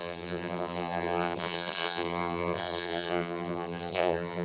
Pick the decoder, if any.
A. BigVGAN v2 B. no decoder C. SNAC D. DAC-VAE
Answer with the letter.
A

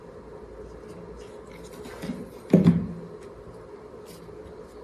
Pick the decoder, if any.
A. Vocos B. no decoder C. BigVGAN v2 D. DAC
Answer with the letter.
B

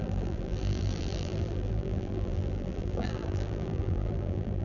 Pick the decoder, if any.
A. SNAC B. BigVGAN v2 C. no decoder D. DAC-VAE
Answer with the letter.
B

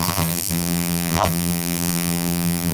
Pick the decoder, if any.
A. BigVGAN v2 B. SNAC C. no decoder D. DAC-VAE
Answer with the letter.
A